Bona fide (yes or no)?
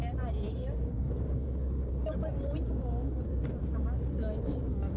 no